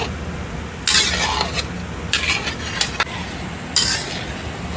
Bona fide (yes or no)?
yes